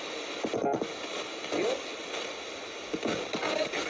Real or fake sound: real